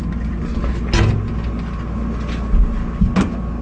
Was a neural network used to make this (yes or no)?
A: no